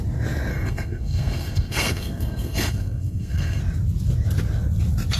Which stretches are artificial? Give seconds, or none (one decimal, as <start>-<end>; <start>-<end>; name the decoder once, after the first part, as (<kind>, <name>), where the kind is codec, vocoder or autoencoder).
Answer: 0.5-3.6 (codec, SNAC)